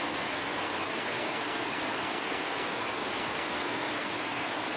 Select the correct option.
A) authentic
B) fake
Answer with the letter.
B